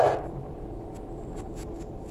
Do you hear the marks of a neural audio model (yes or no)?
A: no